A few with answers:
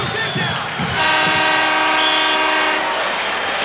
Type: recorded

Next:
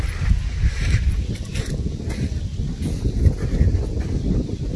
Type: recorded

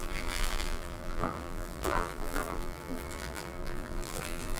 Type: remade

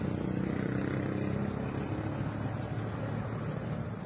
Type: recorded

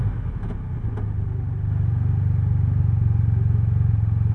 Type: recorded